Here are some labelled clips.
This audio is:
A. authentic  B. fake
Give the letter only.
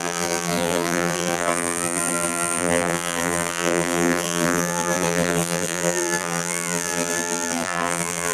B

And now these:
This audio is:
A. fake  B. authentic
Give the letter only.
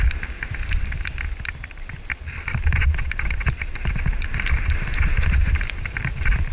A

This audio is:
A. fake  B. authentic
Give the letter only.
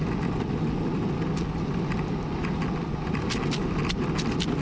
B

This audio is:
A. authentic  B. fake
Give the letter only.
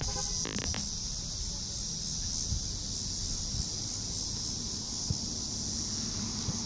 A